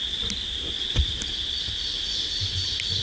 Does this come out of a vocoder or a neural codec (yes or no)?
no